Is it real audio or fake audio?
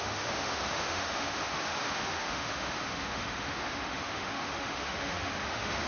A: fake